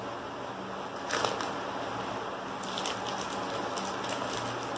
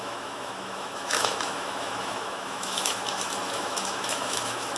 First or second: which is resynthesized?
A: second